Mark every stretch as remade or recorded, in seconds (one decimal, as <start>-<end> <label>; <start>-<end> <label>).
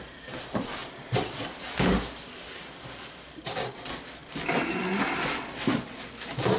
0.0-6.6 recorded